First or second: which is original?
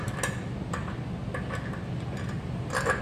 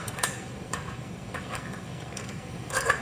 first